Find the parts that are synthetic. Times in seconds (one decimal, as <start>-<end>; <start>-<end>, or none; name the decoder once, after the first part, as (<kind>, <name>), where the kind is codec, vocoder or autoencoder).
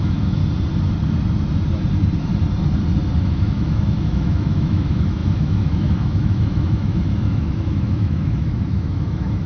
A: 0.0-0.4 (autoencoder, DAC-VAE); 3.2-9.5